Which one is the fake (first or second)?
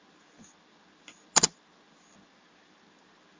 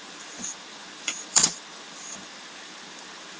second